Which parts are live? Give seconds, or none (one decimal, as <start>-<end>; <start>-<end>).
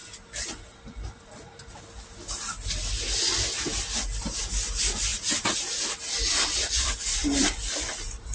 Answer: 0.0-8.3